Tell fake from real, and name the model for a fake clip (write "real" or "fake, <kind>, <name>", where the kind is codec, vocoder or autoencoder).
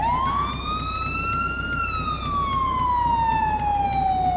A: real